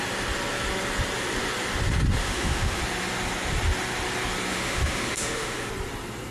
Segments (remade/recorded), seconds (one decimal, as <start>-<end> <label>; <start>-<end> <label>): 0.0-2.2 recorded; 2.2-2.8 remade; 2.8-4.5 recorded; 4.5-5.7 remade; 5.7-6.3 recorded